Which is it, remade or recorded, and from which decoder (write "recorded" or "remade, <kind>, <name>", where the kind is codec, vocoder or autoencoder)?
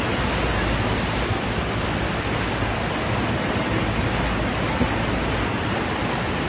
recorded